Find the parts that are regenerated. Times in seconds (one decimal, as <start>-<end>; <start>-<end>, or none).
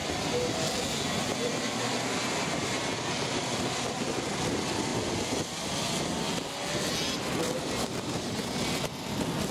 none